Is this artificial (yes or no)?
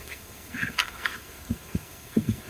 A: yes